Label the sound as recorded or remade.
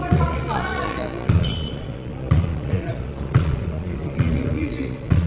remade